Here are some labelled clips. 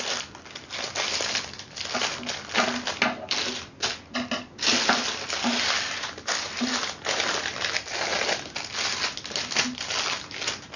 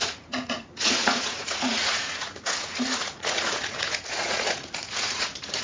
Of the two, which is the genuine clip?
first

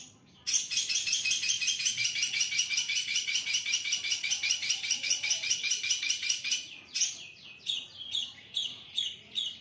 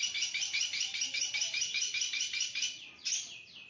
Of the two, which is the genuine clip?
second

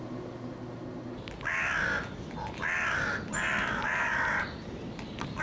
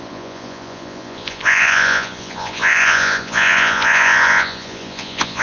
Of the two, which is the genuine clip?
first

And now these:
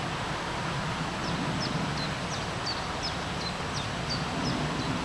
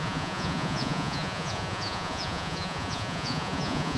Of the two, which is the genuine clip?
first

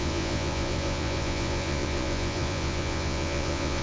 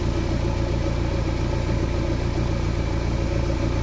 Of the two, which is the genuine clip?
second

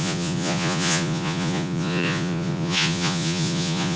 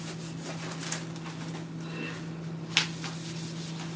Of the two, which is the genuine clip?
second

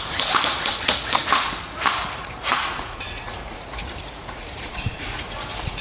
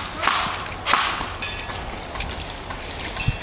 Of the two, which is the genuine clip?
second